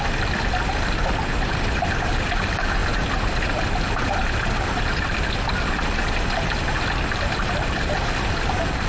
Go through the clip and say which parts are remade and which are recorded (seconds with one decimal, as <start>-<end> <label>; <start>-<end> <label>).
0.0-8.9 recorded